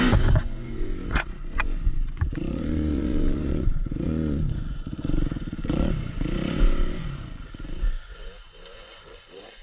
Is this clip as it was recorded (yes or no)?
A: no